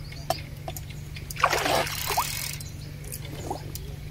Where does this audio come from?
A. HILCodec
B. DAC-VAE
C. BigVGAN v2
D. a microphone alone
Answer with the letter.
D